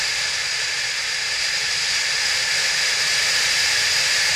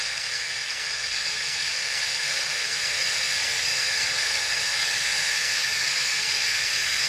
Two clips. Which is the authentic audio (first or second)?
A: first